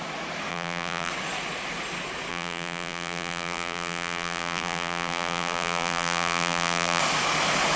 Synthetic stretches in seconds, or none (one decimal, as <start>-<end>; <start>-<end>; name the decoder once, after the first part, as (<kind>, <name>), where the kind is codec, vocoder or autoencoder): 0.5-1.1 (vocoder, BigVGAN v2); 2.3-7.0